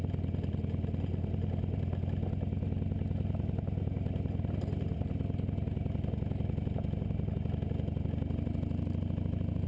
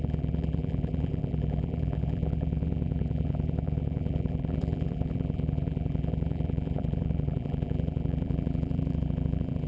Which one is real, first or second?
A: first